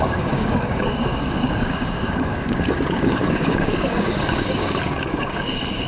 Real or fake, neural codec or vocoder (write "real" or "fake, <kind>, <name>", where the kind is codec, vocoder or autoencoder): fake, codec, DAC